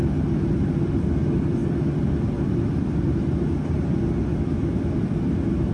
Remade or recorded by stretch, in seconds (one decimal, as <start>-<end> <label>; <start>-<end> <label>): 0.0-4.3 recorded; 4.3-4.8 remade; 4.8-5.7 recorded